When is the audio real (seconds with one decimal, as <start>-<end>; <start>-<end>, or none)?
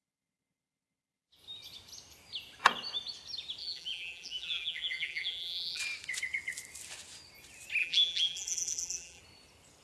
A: 0.0-3.6; 5.8-7.8; 9.2-9.8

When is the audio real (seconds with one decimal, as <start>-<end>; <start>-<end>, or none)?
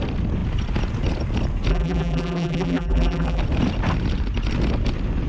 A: 0.0-1.7; 3.4-5.3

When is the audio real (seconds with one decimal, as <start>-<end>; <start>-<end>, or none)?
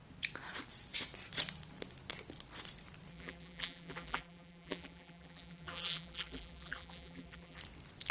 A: 0.0-3.1; 7.6-8.1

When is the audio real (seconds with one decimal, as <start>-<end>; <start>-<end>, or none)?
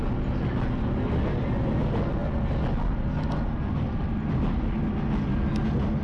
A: 0.0-6.0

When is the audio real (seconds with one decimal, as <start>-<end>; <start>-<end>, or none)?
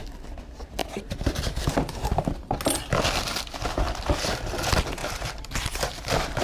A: 0.0-0.8; 2.6-5.0